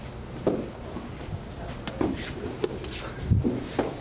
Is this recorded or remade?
recorded